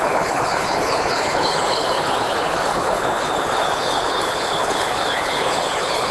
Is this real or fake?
fake